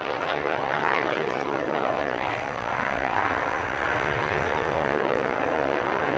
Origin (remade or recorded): remade